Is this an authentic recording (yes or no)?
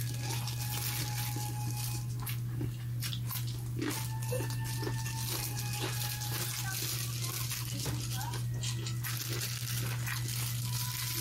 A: yes